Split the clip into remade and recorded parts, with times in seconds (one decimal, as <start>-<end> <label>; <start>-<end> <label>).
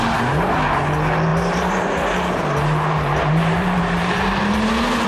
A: 0.0-1.3 recorded; 1.3-4.4 remade; 4.4-5.1 recorded